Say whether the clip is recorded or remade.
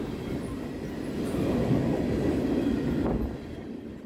recorded